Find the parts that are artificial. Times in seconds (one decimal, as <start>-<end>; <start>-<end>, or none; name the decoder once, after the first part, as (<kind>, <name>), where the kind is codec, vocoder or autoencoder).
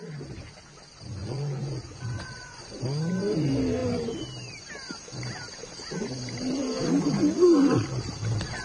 1.2-2.8 (vocoder, Vocos)